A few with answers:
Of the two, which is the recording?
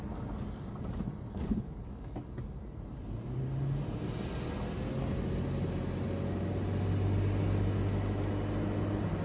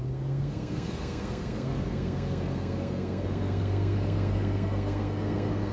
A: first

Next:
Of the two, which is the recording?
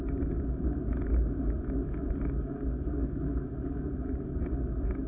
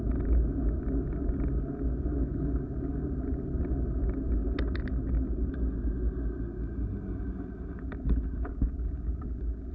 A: second